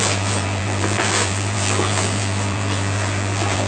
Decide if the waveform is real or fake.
fake